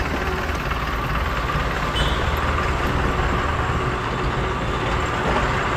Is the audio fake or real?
real